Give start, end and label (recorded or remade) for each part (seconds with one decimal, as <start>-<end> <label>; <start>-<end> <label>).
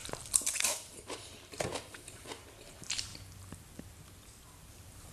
0.0-0.6 recorded; 0.6-3.1 remade; 3.1-4.6 recorded; 4.6-5.1 remade